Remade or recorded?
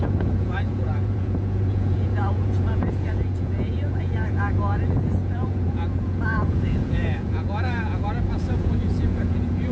remade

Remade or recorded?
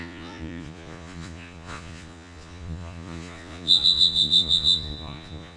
remade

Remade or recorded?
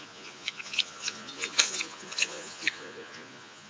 remade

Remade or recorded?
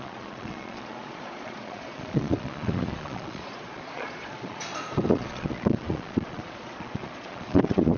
remade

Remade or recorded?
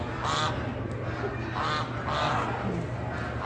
recorded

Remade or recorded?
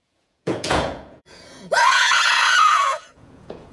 remade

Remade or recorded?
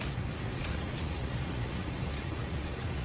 remade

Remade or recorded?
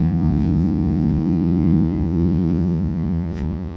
remade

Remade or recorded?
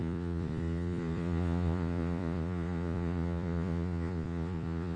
remade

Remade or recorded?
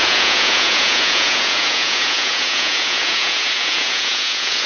remade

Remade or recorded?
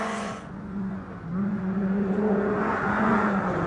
remade